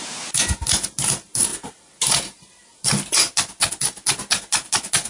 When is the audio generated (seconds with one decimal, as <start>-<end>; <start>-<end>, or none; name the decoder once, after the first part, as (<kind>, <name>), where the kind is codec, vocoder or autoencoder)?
none